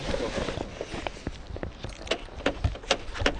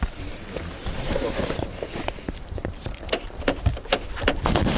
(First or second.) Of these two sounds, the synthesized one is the second